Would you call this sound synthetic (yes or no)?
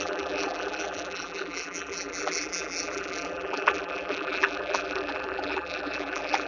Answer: yes